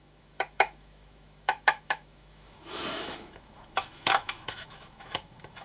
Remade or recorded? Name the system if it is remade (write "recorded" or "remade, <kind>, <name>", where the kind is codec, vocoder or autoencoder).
remade, autoencoder, DAC-VAE